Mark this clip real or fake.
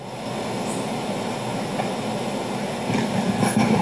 real